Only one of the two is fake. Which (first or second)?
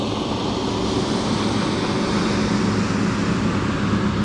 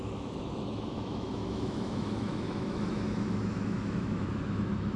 second